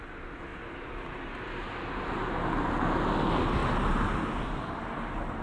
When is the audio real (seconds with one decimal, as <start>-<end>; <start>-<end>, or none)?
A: 0.0-5.4